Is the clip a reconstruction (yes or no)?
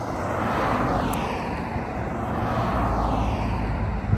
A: no